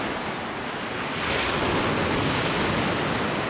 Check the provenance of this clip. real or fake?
real